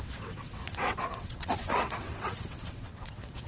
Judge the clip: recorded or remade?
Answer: remade